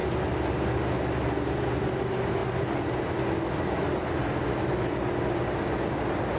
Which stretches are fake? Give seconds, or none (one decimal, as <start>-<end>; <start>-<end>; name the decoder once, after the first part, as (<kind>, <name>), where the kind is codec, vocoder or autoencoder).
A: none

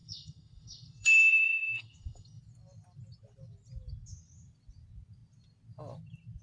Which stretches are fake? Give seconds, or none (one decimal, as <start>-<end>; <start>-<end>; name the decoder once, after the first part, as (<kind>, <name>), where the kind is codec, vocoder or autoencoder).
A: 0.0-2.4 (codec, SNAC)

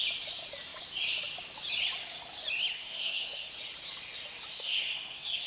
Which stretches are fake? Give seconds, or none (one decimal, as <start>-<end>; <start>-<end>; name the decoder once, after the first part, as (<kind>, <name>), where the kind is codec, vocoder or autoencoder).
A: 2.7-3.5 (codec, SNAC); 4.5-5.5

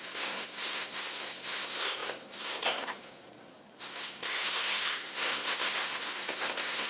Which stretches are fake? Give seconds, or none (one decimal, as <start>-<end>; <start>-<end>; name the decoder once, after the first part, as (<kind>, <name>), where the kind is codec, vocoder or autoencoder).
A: 0.0-6.9 (codec, SNAC)

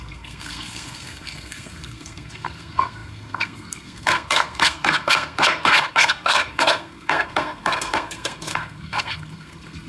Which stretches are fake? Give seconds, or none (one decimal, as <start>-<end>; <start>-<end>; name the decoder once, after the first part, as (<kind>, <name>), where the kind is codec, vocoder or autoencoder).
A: 0.0-9.9 (codec, SNAC)

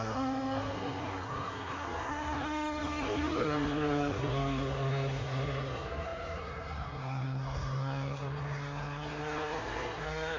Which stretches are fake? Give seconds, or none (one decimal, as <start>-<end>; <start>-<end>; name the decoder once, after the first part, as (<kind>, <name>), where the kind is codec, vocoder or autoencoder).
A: 0.0-10.4 (codec, SNAC)